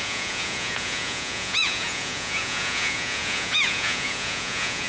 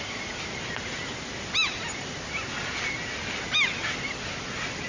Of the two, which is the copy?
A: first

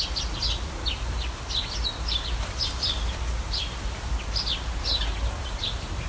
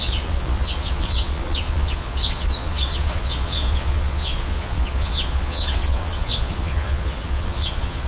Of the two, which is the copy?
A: second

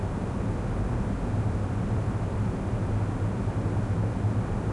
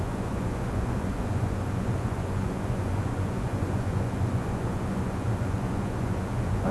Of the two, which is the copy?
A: second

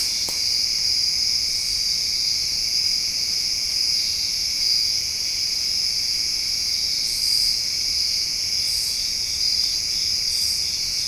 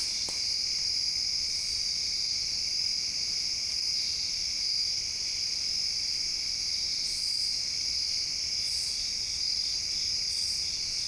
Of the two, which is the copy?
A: first